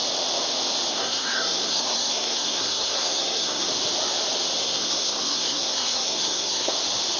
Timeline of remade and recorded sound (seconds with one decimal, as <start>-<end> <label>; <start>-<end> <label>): 0.0-0.9 recorded; 0.9-3.7 remade; 3.7-4.6 recorded; 4.6-6.7 remade; 6.7-7.2 recorded